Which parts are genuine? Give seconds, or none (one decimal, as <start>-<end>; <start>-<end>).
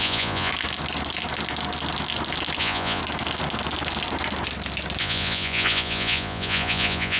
0.5-2.6; 3.0-5.0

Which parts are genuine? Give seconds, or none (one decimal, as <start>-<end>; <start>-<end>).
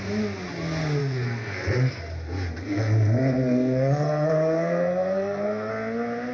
0.0-1.0; 2.0-2.6; 5.7-6.3